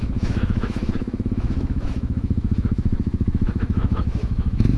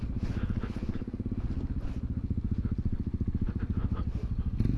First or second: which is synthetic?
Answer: first